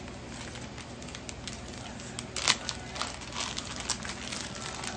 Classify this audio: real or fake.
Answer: real